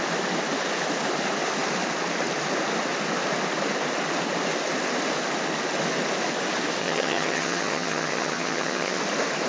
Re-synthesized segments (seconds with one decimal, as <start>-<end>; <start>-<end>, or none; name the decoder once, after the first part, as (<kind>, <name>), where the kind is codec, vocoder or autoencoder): 6.8-9.0 (vocoder, HiFi-GAN)